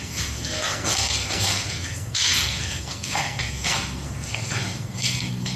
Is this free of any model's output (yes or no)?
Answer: no